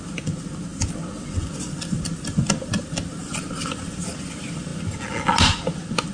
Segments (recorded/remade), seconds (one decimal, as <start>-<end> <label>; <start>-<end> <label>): 0.0-6.1 recorded